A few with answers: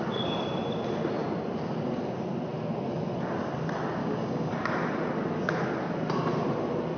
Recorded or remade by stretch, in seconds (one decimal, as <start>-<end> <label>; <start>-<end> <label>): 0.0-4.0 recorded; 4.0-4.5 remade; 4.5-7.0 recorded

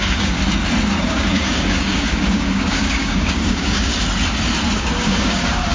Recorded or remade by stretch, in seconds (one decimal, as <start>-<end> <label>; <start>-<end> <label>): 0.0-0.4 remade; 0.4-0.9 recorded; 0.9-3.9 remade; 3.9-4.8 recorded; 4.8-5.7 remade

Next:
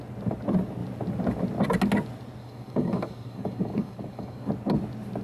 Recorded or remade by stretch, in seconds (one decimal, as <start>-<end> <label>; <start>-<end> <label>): 0.0-2.4 recorded; 2.4-4.5 remade; 4.5-5.2 recorded

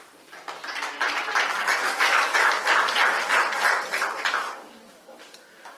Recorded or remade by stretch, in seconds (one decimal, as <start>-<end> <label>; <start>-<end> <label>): 0.0-1.6 recorded; 1.6-2.5 remade; 2.5-4.4 recorded; 4.4-5.8 remade

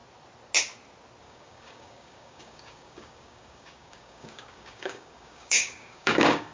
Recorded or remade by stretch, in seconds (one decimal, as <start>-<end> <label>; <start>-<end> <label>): 0.0-1.2 recorded; 1.2-6.5 remade

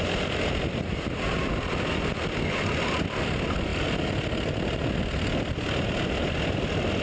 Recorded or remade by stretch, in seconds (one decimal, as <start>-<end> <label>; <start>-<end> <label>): 0.0-7.0 recorded